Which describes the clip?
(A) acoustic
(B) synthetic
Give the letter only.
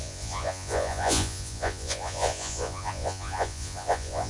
B